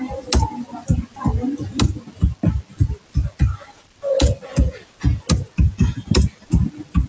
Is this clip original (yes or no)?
yes